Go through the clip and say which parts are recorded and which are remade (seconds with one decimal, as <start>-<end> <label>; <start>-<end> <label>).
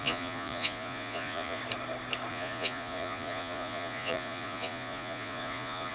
0.0-1.6 remade; 1.6-2.3 recorded; 2.3-5.9 remade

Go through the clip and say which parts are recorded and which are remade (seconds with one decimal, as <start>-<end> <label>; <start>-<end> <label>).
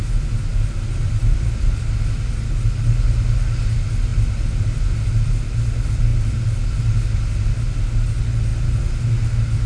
0.0-9.7 recorded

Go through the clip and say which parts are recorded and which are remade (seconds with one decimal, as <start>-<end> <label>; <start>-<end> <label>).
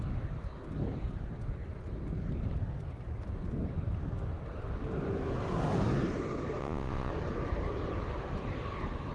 0.0-6.6 recorded; 6.6-7.1 remade; 7.1-9.1 recorded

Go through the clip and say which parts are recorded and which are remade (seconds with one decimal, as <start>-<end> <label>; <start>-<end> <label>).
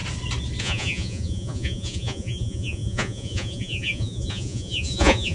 0.0-0.6 recorded; 0.6-5.3 remade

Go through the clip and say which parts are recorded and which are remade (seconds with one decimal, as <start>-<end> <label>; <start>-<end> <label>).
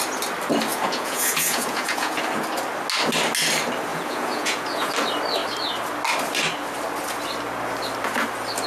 0.0-0.7 recorded; 0.7-2.2 remade; 2.2-3.9 recorded; 3.9-4.9 remade; 4.9-8.7 recorded